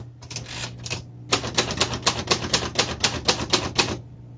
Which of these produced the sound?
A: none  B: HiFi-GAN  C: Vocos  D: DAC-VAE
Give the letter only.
A